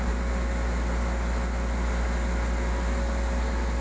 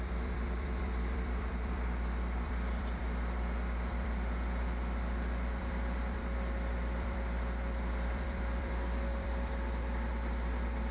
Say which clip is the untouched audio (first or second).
first